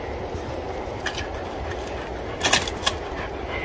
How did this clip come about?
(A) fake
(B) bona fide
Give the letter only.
B